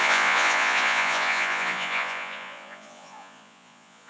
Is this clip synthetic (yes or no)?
yes